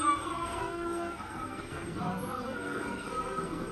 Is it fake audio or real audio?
fake